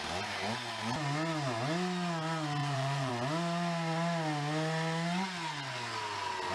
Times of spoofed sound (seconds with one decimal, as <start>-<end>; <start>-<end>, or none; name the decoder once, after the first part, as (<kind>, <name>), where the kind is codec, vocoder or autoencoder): 2.6-3.1 (vocoder, Vocos)